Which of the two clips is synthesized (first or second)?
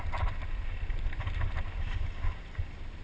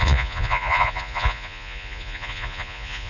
second